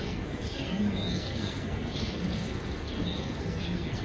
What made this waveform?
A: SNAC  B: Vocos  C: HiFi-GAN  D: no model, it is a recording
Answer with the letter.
A